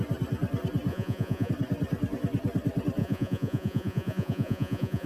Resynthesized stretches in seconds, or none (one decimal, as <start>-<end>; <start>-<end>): 0.9-1.5; 3.0-5.1